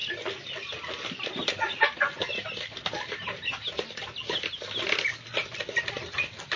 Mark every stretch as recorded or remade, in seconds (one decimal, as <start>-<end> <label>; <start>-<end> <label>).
0.0-6.6 recorded